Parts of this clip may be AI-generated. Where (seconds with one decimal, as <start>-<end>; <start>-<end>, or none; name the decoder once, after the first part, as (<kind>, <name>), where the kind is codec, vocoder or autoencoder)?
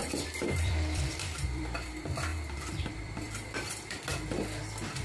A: 0.0-4.1 (vocoder, BigVGAN v2)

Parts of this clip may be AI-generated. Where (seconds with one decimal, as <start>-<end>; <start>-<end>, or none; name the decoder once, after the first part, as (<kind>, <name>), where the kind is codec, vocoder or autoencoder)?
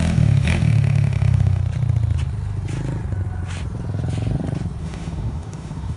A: 0.0-1.6 (autoencoder, DAC-VAE); 4.8-6.0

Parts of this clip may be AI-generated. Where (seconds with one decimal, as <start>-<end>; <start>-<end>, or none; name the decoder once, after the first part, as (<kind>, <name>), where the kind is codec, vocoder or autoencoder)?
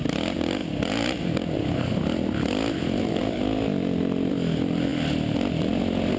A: none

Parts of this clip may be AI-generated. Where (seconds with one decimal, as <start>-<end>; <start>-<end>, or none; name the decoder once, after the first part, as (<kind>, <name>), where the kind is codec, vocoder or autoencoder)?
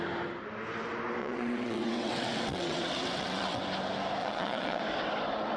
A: 1.2-3.6 (vocoder, WaveNeXt); 4.2-4.8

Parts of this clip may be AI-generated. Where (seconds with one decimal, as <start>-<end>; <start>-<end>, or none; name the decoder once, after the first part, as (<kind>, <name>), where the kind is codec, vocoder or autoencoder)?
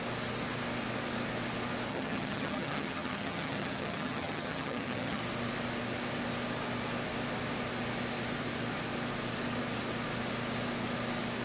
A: 1.9-5.2 (vocoder, HiFi-GAN)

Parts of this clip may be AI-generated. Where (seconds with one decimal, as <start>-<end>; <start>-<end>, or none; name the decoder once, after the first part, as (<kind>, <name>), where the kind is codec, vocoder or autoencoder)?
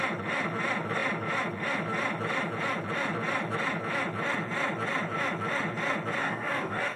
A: 6.2-7.0 (codec, DAC)